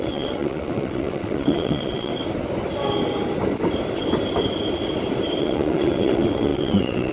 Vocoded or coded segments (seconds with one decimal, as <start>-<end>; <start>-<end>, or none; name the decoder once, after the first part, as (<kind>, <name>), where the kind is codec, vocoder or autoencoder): 0.0-2.1 (vocoder, WaveNeXt); 5.4-7.1